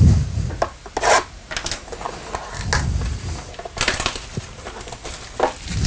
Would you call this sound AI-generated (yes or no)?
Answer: no